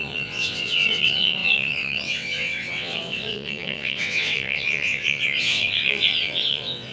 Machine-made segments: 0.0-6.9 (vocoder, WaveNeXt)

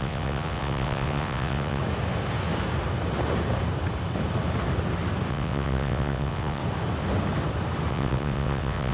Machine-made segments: 0.0-1.8 (vocoder, WaveNeXt); 5.3-6.6; 7.9-8.9